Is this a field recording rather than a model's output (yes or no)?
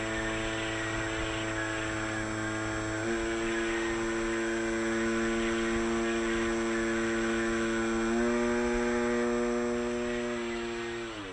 yes